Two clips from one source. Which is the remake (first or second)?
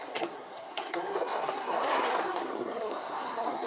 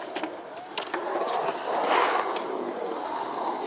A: first